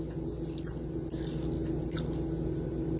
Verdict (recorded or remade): recorded